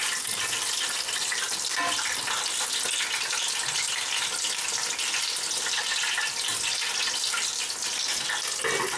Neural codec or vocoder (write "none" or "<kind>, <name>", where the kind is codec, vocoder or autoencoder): none